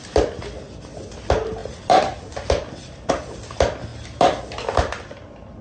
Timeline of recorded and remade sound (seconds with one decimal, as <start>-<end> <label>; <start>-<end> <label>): 0.0-5.6 recorded